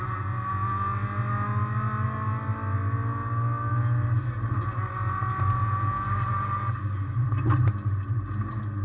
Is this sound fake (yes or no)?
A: no